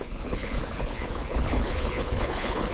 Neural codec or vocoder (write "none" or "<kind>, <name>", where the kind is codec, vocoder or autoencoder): codec, HILCodec